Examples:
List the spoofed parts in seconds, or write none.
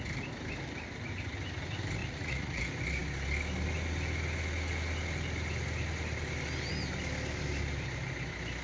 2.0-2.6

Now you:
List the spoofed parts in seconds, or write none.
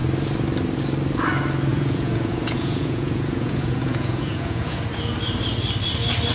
1.7-4.8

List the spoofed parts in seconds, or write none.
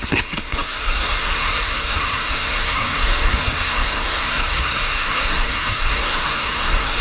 0.0-7.0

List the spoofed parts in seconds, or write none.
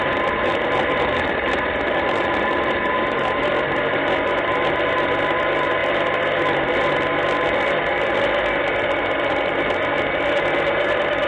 none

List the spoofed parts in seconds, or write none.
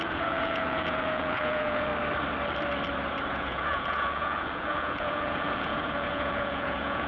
0.0-1.9; 3.3-7.1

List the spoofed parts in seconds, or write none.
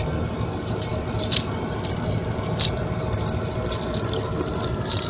none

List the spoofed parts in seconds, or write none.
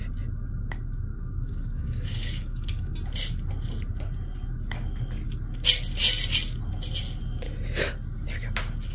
1.1-2.9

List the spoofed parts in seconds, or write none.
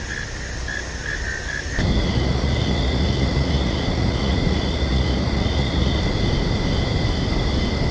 1.9-6.0